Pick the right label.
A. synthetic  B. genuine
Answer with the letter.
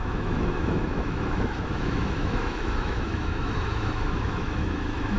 A